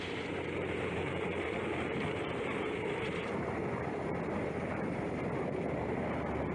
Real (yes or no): no